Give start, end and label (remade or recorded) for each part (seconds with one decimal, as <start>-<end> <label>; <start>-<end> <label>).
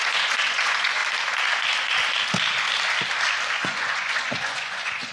0.0-1.0 remade; 1.0-3.5 recorded; 3.5-5.1 remade